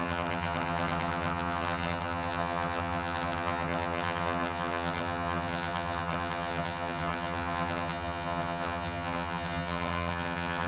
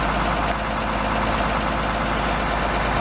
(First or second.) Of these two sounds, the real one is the second